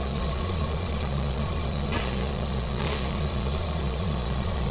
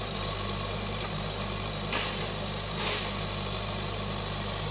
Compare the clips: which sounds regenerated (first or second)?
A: first